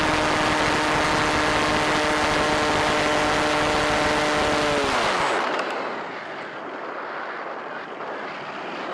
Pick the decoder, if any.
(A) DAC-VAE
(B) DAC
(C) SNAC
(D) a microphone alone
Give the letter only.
D